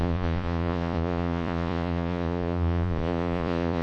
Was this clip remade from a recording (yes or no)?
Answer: yes